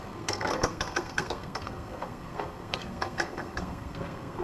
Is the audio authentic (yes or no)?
no